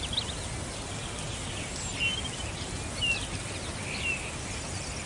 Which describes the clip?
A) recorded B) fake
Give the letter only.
A